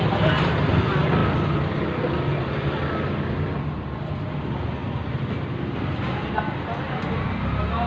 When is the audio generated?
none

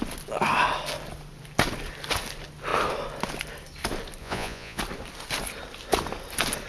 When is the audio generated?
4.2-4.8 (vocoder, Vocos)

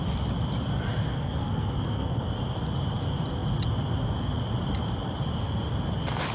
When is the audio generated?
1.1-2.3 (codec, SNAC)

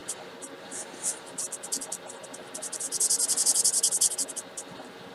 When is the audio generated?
none